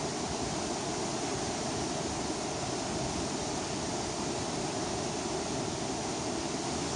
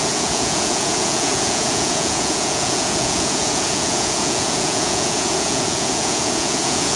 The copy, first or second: second